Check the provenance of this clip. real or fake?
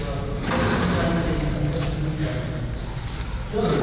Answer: real